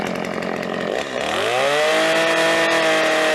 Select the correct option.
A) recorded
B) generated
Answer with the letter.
A